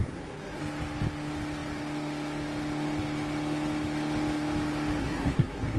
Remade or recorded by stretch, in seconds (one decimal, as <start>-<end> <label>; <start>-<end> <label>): 0.0-0.6 remade; 0.6-5.0 recorded; 5.0-5.8 remade